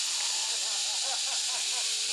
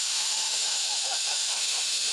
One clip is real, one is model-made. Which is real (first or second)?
first